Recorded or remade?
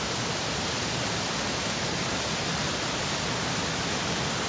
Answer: recorded